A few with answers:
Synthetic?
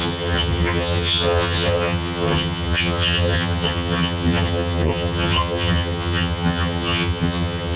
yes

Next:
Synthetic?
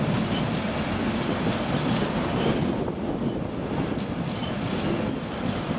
no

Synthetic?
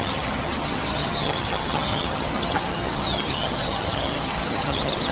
yes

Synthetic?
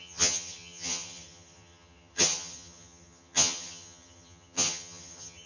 yes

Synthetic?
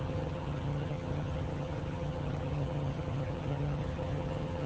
yes